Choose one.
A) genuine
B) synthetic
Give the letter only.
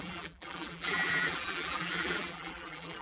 B